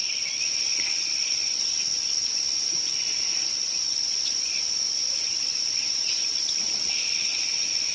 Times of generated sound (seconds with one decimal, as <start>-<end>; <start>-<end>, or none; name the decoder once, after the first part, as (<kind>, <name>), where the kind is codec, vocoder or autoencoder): 0.0-7.9 (vocoder, Vocos)